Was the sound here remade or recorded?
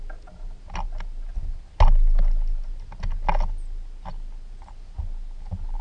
recorded